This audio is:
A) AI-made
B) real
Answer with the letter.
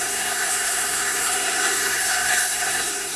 A